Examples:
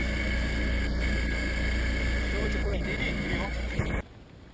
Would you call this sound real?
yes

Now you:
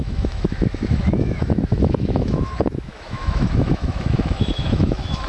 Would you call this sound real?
no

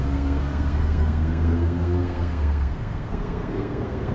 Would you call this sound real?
no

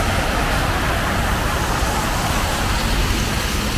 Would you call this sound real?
yes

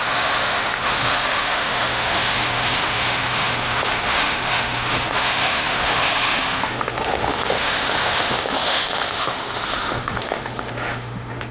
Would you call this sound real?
no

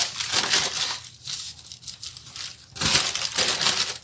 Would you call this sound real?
yes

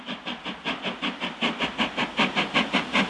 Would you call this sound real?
yes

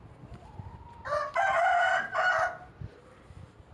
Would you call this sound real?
yes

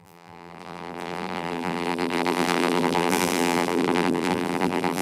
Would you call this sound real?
no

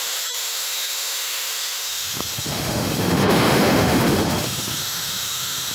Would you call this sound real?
no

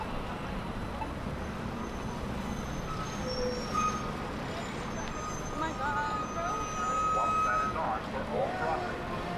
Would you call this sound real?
yes